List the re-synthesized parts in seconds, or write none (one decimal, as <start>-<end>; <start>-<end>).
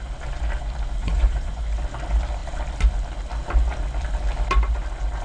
1.0-1.6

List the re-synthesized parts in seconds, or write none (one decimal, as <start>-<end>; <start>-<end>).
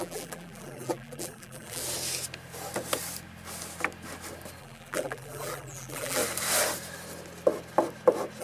0.0-1.8; 4.6-6.2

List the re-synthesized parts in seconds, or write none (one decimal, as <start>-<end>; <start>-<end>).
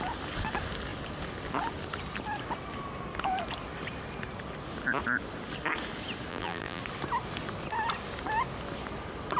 6.3-6.8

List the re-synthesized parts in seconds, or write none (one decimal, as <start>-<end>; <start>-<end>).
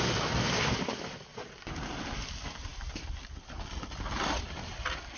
none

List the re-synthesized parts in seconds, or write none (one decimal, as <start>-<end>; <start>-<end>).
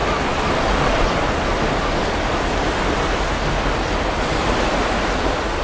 none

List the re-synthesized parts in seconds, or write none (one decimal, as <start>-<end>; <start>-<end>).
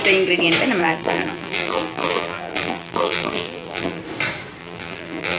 0.8-4.0; 4.6-5.4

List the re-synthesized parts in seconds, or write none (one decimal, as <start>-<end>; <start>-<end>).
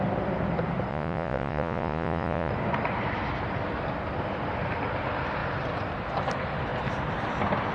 0.9-2.5